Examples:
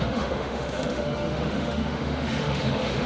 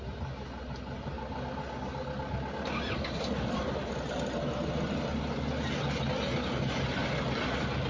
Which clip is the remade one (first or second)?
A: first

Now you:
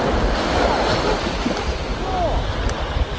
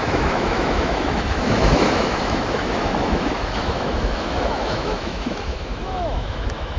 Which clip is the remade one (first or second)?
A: second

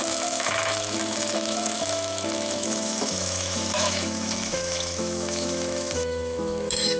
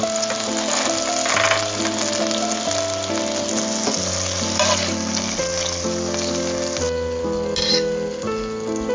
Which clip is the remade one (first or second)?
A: first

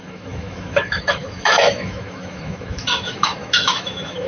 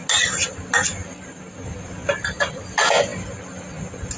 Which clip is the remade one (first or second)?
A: first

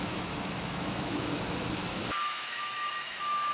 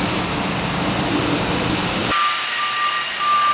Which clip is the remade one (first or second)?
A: first